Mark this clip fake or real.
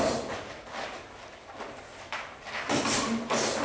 real